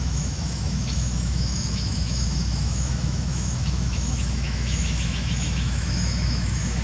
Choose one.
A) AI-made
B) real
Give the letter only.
A